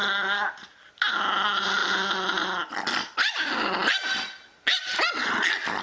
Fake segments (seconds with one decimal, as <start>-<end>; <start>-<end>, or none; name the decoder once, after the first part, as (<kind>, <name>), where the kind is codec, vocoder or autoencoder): none